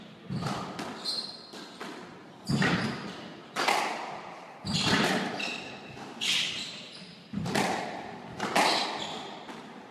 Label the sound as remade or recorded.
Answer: recorded